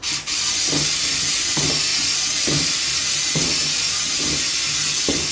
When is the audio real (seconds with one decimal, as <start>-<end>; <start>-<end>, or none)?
0.0-5.3